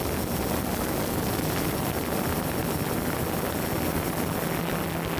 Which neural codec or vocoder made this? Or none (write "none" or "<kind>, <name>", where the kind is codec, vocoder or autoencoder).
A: none